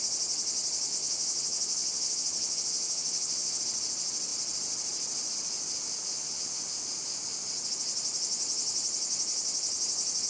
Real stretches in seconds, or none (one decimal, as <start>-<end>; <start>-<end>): 0.0-0.9; 3.6-6.1; 6.6-10.3